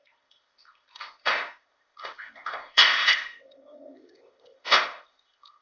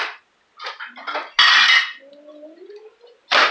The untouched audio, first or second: second